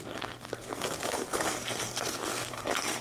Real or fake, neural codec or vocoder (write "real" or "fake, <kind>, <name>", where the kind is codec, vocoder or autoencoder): fake, codec, SNAC